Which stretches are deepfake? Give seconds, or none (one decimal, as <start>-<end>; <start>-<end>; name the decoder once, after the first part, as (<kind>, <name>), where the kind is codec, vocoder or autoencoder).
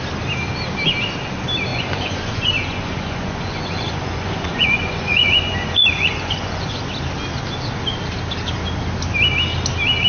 1.7-6.8 (vocoder, Vocos)